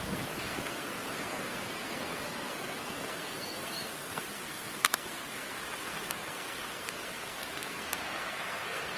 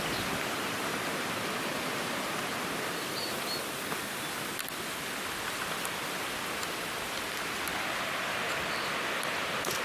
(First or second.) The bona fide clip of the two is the second